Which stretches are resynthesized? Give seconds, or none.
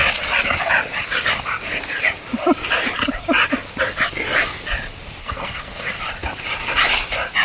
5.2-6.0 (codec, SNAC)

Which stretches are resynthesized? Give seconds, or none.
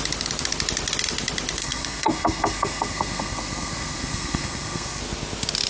1.6-5.0 (codec, SNAC)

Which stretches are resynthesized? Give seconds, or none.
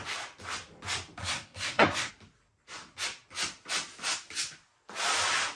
1.2-2.1 (codec, SNAC)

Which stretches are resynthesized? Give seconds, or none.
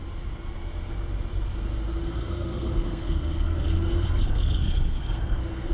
2.0-5.7 (codec, SNAC)